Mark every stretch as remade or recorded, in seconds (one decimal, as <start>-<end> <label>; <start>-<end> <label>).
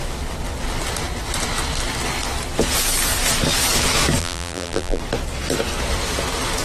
0.0-4.2 recorded; 4.2-5.0 remade; 5.0-6.6 recorded